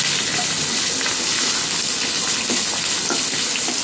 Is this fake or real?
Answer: real